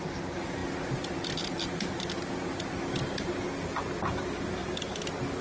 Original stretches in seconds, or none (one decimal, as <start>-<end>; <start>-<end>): 0.0-5.4